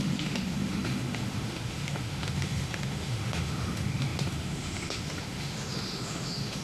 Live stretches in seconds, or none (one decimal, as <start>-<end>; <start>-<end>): none